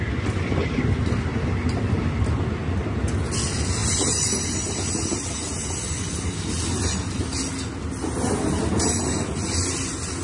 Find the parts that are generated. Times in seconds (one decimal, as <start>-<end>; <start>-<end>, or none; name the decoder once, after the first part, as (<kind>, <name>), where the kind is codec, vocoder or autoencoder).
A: none